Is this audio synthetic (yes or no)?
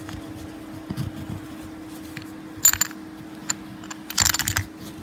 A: no